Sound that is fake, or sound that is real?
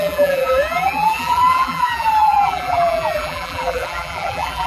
fake